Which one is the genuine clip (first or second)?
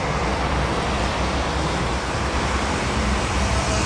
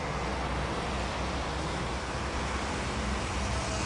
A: second